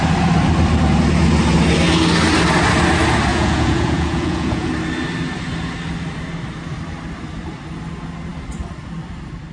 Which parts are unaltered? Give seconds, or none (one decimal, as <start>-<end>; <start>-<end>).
0.0-3.3; 4.7-9.5